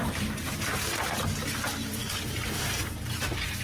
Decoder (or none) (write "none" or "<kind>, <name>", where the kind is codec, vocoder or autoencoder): vocoder, BigVGAN v2